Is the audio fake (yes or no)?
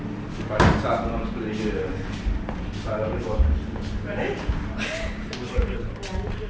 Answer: no